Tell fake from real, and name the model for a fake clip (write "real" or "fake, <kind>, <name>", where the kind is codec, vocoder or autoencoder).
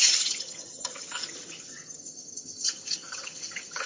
fake, vocoder, HiFi-GAN